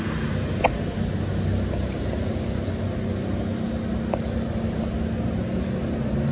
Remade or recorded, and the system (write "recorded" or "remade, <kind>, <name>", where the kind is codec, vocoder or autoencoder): recorded